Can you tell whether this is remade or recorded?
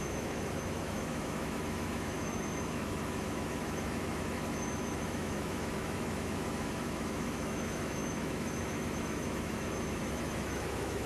remade